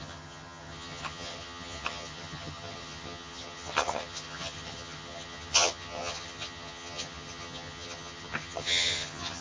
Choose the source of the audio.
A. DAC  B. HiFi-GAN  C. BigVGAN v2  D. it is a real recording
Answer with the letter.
B